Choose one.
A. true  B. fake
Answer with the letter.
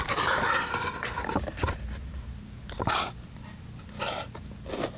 A